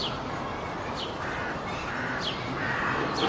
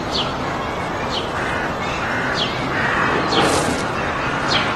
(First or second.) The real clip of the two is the second